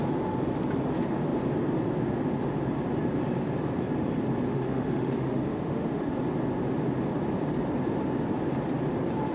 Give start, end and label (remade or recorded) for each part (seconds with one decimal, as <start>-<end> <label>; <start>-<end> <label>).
0.0-4.5 recorded; 4.5-6.1 remade; 6.1-9.3 recorded